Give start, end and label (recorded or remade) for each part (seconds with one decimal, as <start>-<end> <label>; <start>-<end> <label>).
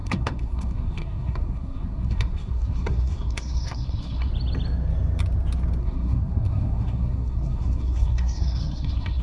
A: 0.0-4.3 remade; 4.3-5.8 recorded; 5.8-9.2 remade